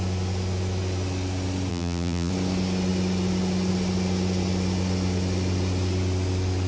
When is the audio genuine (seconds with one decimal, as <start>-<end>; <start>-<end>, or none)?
0.0-1.7; 2.3-6.7